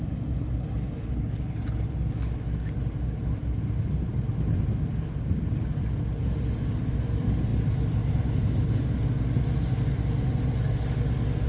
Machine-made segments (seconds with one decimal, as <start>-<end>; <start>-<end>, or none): none